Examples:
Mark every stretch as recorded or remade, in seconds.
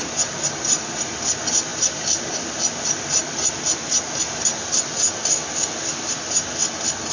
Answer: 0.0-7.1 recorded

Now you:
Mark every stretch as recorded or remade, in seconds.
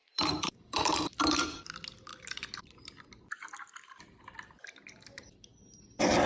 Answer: 0.0-1.6 remade; 1.6-6.3 recorded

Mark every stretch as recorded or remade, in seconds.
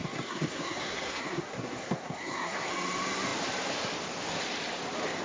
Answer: 0.0-2.7 remade; 2.7-5.2 recorded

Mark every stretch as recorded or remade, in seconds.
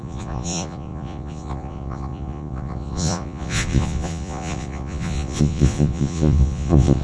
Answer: 0.0-7.0 remade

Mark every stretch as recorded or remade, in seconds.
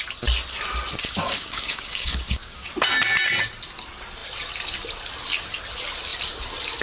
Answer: 0.0-1.0 recorded; 1.0-2.7 remade; 2.7-6.8 recorded